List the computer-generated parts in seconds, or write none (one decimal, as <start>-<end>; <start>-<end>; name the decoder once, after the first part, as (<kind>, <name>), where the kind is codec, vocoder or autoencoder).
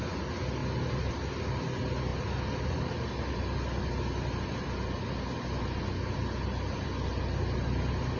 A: none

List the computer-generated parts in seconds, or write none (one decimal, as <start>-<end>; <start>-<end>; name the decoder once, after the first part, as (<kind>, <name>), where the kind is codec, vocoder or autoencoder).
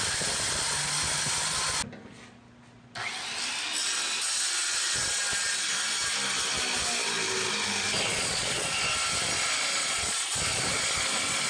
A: 8.1-8.8 (vocoder, Vocos); 9.8-10.4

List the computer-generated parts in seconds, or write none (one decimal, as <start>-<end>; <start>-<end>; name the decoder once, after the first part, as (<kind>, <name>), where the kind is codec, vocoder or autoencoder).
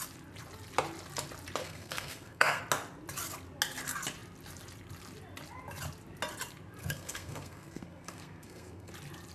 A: 1.6-2.6 (codec, SNAC); 6.8-8.9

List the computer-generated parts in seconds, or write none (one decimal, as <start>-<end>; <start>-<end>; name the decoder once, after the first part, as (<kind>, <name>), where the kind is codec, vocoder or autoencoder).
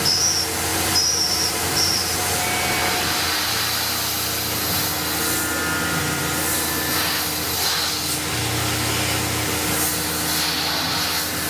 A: 0.7-2.2 (vocoder, BigVGAN v2)